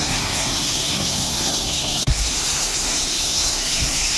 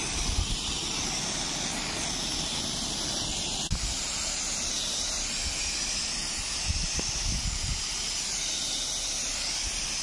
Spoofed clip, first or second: first